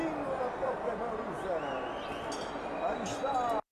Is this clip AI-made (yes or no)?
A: no